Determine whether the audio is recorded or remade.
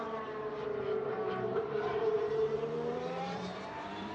remade